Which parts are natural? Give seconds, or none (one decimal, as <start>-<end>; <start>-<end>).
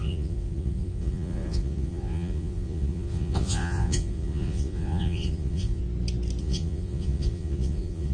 5.8-6.4